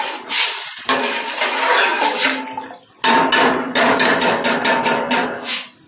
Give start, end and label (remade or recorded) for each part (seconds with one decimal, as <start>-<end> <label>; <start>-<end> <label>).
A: 0.0-5.9 recorded